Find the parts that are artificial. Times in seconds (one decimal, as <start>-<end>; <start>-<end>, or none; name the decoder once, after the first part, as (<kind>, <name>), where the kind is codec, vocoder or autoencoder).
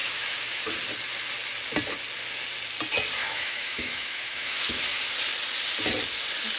0.0-0.7 (autoencoder, DAC-VAE); 3.2-4.8